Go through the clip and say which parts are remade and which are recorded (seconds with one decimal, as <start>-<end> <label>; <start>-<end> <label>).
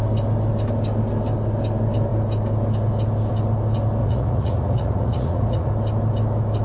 0.0-4.0 recorded; 4.0-5.7 remade; 5.7-6.6 recorded